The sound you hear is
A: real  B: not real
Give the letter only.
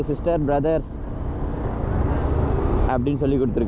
A